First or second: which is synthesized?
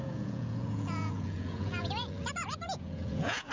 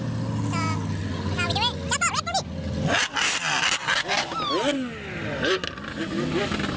first